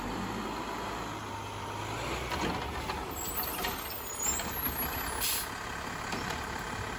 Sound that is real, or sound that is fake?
real